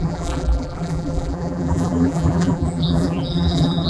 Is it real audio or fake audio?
fake